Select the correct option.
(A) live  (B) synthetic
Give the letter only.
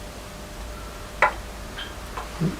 A